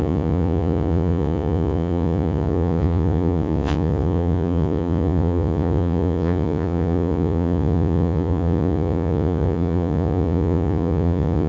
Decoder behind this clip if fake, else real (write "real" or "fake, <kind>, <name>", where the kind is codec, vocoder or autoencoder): fake, vocoder, Vocos